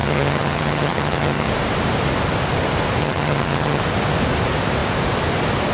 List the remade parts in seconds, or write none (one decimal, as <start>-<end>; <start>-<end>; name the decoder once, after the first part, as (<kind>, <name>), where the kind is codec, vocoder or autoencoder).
0.0-1.5 (vocoder, HiFi-GAN); 3.0-3.8